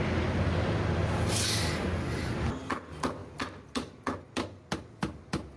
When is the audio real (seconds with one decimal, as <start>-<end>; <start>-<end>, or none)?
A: 0.0-5.6